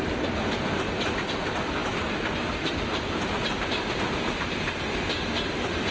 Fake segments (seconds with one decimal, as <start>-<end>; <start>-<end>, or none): none